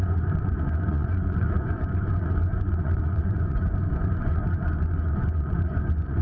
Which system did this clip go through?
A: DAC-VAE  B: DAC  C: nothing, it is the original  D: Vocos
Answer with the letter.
D